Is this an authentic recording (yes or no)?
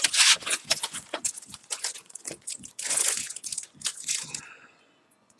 no